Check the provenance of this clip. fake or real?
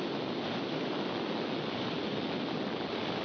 real